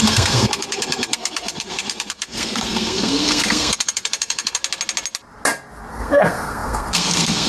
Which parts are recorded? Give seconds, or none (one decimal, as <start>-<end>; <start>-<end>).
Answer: 4.6-5.9